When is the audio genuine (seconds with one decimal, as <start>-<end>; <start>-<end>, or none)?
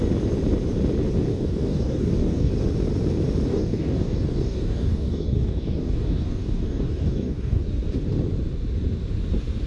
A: 0.0-1.3; 2.5-3.5; 7.6-9.7